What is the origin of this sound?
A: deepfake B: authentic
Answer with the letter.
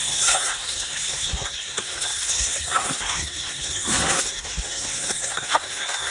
A